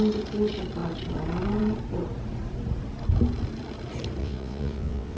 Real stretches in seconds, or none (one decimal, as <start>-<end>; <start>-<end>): 0.0-4.2